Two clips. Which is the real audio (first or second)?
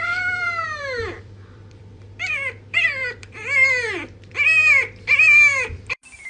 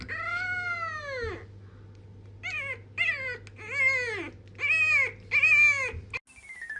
second